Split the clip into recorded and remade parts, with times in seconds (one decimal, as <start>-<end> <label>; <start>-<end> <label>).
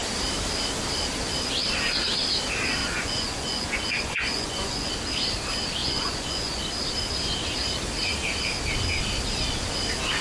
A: 0.0-2.8 recorded; 2.8-4.9 remade; 4.9-5.8 recorded; 5.8-6.6 remade; 6.6-10.2 recorded